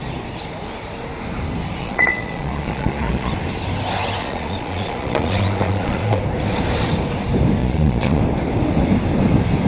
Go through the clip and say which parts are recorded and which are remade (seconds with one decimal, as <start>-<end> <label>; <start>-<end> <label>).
0.0-1.8 recorded; 1.8-3.3 remade; 3.3-4.2 recorded; 4.2-6.2 remade; 6.2-7.6 recorded; 7.6-8.2 remade; 8.2-9.7 recorded